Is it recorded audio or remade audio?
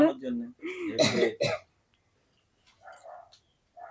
recorded